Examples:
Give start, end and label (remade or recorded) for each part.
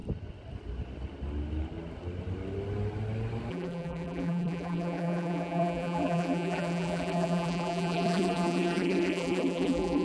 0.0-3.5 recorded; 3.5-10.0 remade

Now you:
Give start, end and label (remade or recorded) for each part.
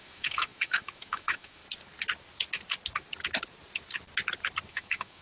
0.0-1.6 remade; 1.6-4.7 recorded; 4.7-5.2 remade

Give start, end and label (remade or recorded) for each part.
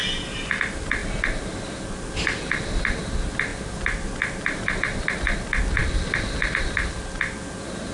0.0-7.9 recorded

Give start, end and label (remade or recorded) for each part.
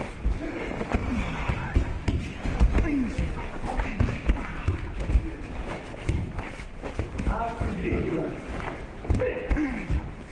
0.0-7.8 recorded; 7.8-8.4 remade; 8.4-10.3 recorded